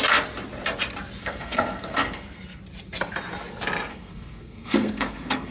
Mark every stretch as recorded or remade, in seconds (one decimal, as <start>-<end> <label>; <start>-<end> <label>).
0.0-1.2 recorded; 1.2-2.6 remade; 2.6-3.9 recorded; 3.9-5.5 remade